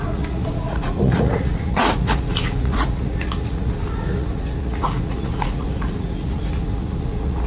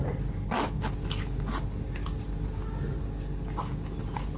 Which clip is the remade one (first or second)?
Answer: first